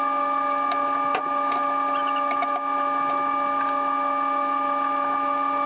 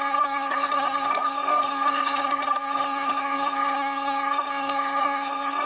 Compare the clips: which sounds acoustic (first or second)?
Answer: first